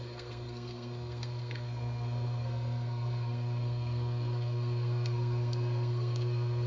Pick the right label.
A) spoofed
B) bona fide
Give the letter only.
A